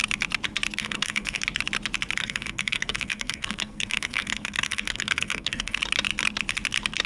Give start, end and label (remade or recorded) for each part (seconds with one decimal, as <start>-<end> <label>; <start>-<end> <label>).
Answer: 0.0-0.8 recorded; 0.8-1.4 remade; 1.4-2.2 recorded; 2.2-5.8 remade; 5.8-7.1 recorded